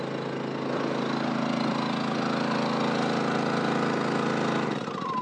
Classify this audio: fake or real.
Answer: real